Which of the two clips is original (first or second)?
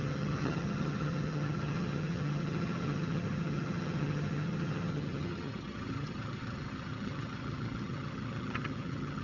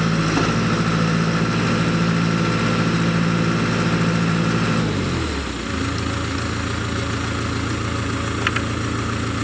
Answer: second